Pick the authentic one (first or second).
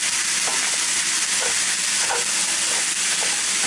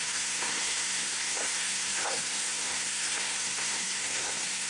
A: first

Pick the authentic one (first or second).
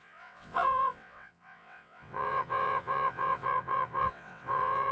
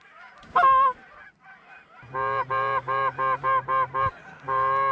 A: second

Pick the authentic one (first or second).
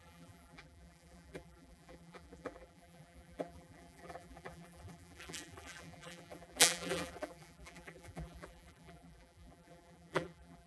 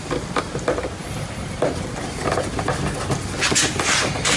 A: second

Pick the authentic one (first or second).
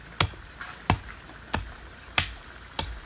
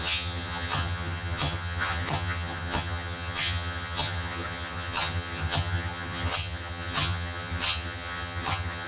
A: first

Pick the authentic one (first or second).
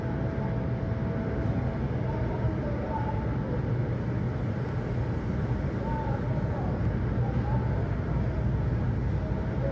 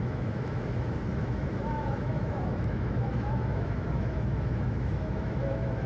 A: first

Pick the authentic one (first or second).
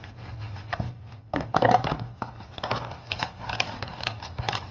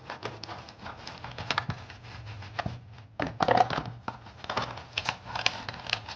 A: second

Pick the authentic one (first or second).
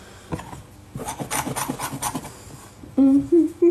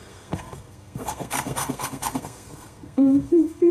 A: first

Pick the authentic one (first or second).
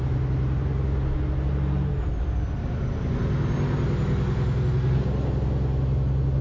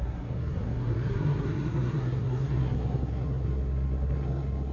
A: first